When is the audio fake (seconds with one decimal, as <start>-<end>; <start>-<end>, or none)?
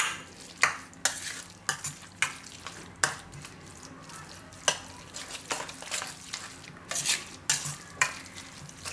3.7-4.6